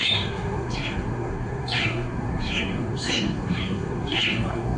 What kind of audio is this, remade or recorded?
remade